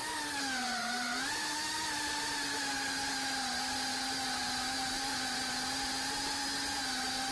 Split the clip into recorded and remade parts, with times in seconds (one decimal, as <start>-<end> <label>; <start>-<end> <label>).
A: 0.0-7.3 recorded